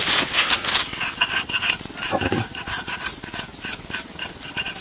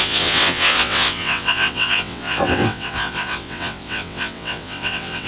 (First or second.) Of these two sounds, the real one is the first